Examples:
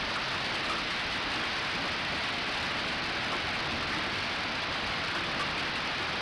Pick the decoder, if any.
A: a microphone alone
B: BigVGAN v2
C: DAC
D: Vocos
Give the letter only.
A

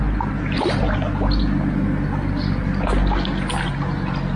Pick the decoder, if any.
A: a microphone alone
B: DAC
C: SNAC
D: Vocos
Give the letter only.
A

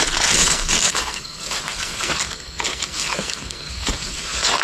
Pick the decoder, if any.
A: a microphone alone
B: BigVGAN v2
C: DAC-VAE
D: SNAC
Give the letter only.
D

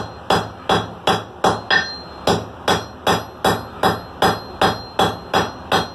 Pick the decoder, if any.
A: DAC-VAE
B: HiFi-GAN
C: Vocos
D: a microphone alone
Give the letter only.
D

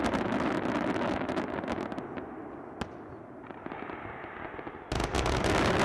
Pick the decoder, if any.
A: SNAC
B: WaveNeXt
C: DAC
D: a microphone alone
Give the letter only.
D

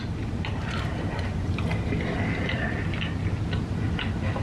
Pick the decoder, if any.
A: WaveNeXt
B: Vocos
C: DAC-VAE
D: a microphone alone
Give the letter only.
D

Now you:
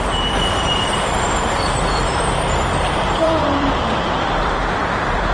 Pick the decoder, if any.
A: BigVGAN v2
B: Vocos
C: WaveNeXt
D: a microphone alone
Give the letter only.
A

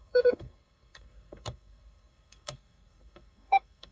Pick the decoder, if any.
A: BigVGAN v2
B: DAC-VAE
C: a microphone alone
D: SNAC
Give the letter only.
D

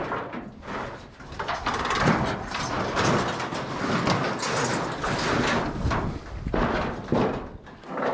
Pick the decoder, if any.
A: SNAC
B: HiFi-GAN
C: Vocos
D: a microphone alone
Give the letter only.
D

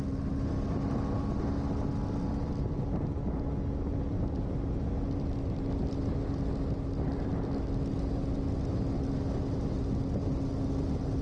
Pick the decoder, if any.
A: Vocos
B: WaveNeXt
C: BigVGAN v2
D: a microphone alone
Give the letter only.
D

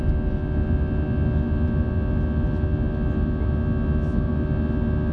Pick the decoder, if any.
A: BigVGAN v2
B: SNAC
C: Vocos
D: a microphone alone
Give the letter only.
D